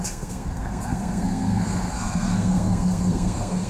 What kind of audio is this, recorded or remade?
remade